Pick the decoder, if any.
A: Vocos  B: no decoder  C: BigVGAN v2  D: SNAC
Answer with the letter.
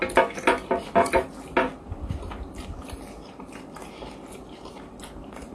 B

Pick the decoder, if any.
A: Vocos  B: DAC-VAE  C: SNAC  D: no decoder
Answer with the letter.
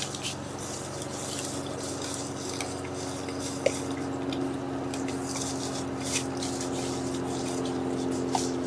D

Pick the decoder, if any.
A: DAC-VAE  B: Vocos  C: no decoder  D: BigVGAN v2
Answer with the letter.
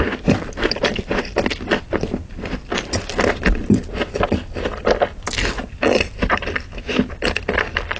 C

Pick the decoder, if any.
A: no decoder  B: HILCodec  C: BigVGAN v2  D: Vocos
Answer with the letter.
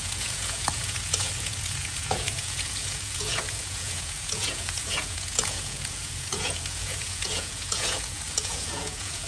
D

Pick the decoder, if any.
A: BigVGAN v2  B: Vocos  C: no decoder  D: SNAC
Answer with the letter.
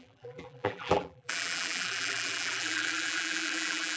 A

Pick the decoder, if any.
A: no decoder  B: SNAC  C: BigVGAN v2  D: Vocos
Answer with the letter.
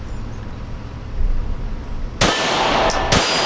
A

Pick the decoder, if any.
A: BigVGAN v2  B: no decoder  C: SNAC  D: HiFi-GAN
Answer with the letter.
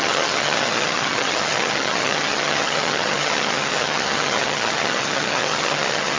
D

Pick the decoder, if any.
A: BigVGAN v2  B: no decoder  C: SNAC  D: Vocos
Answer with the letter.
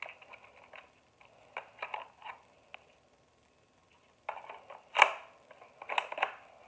B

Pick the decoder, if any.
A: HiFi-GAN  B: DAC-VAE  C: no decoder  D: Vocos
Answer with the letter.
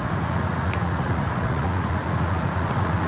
D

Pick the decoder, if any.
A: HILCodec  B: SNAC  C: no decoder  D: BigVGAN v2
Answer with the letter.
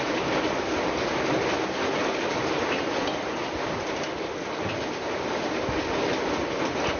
C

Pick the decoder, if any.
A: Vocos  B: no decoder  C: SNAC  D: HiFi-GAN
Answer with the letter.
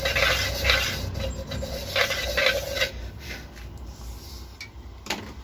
B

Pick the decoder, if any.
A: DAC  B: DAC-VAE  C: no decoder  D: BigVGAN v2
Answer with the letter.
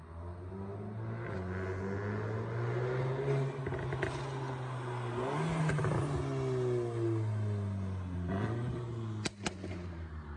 C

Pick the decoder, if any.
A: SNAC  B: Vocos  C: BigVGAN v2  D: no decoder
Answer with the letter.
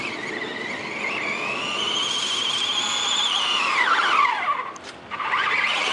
D